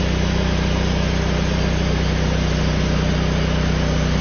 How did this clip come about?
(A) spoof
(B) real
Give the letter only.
B